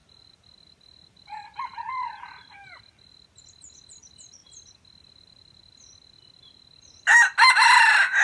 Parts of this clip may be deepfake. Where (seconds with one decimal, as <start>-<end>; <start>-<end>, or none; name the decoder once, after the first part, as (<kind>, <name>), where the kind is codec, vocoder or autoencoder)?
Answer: none